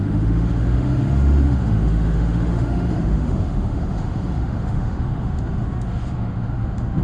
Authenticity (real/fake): fake